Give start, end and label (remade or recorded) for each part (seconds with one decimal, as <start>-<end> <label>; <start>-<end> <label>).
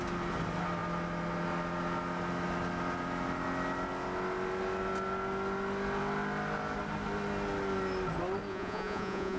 0.0-8.5 recorded; 8.5-9.4 remade